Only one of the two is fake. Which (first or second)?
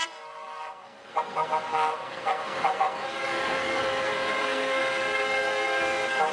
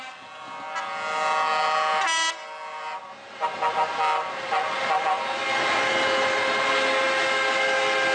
first